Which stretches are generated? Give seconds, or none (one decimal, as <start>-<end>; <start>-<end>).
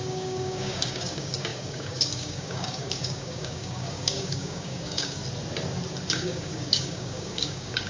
0.0-5.2; 6.1-7.9